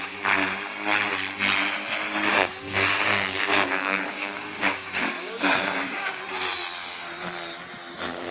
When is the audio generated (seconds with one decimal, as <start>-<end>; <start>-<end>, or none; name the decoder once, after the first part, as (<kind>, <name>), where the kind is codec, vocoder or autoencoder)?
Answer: 2.3-6.2 (codec, DAC)